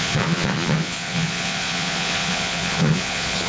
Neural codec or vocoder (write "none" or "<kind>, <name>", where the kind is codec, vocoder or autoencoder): vocoder, Vocos